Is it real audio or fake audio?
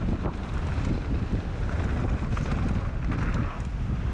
real